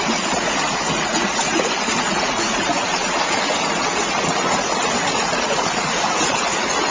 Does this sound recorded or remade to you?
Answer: remade